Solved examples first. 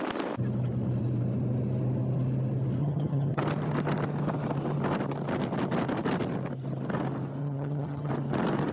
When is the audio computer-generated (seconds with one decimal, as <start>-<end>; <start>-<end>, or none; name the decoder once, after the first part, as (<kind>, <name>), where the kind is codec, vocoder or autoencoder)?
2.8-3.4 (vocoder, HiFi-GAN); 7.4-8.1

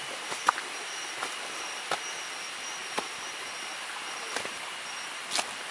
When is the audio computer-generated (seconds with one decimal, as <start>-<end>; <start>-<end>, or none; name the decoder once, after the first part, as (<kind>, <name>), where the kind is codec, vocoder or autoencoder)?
none

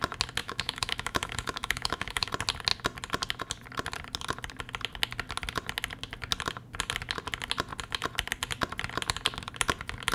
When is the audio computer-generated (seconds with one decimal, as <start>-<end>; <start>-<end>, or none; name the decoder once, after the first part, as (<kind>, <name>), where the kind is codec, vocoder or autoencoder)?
0.4-2.3 (autoencoder, DAC-VAE)

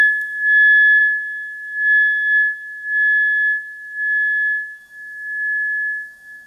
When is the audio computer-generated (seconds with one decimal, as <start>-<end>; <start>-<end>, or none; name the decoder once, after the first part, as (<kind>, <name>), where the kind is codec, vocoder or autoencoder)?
0.0-1.0 (autoencoder, DAC-VAE); 4.8-6.5